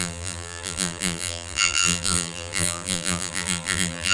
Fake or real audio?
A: fake